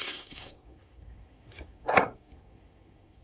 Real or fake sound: fake